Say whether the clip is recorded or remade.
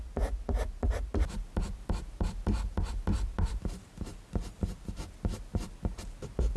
recorded